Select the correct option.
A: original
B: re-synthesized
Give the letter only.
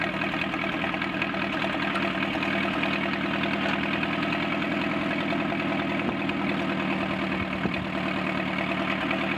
A